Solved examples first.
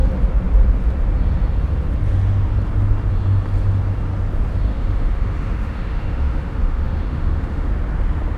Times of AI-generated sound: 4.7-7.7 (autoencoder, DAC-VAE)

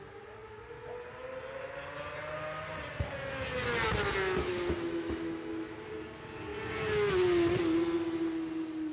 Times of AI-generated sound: 4.5-5.9 (autoencoder, DAC-VAE)

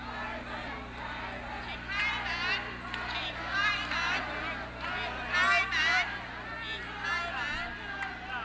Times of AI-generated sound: none

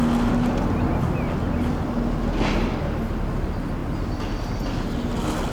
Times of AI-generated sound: none

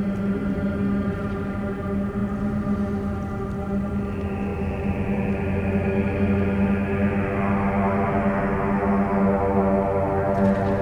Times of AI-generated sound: none

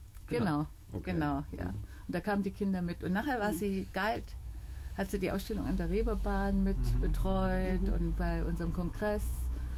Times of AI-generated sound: 0.0-0.9 (autoencoder, DAC-VAE); 1.7-9.8

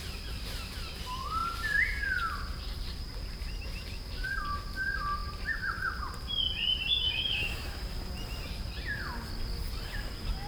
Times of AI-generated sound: 6.9-7.8 (autoencoder, DAC-VAE)